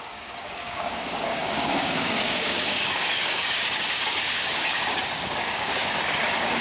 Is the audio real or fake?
fake